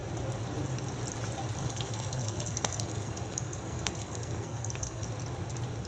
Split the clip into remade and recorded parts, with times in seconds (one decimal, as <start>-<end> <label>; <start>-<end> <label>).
0.0-1.6 recorded; 1.6-5.1 remade; 5.1-5.9 recorded